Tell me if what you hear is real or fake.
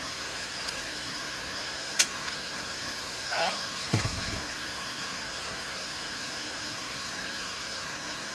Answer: fake